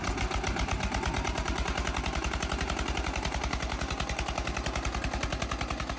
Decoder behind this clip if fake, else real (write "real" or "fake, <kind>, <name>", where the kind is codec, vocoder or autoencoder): real